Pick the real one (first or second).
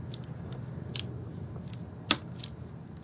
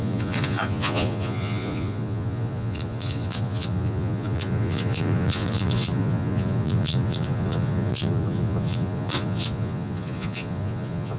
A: first